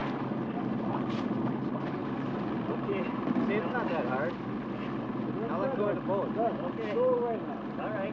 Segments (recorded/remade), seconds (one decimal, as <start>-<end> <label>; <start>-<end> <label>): 0.0-8.1 recorded